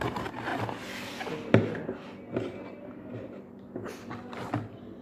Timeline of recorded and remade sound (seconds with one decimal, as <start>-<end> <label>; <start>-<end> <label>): 0.0-5.0 recorded